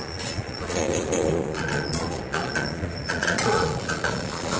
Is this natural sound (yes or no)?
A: no